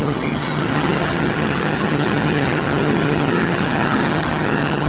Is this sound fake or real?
fake